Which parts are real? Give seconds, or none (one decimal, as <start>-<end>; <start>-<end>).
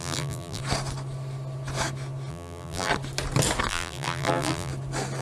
0.6-2.3; 2.9-3.7; 4.7-5.2